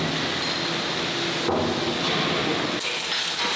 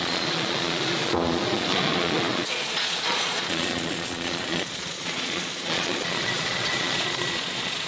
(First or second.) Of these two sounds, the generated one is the second